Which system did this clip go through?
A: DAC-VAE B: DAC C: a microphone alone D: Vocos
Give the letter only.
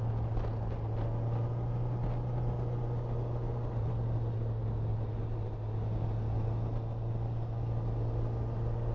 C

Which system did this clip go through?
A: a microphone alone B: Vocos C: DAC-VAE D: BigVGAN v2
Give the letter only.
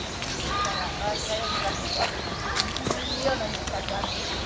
A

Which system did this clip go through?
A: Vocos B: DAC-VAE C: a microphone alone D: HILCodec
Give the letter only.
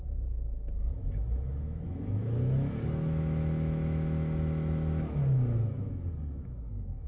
B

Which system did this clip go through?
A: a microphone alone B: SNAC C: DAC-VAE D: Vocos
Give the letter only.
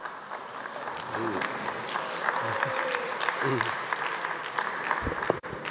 A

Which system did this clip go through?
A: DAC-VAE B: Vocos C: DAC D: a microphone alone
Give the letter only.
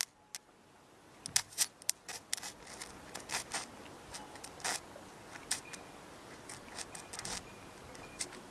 D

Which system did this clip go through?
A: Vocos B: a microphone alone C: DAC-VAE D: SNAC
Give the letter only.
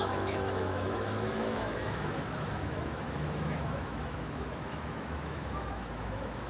C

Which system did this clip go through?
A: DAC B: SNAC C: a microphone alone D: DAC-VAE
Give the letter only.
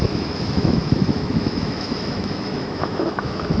D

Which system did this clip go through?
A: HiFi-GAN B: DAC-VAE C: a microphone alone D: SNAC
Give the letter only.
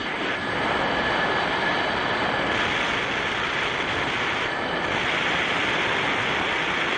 C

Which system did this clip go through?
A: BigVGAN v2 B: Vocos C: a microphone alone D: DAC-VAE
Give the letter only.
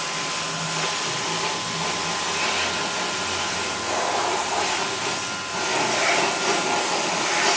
C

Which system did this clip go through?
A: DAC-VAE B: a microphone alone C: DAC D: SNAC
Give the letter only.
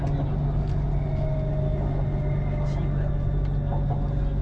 B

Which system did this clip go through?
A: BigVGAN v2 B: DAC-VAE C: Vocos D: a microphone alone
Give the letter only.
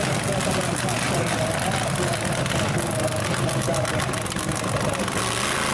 D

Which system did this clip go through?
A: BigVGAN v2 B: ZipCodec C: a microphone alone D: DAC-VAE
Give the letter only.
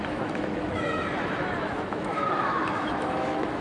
D